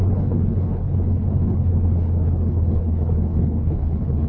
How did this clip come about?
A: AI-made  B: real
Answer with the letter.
A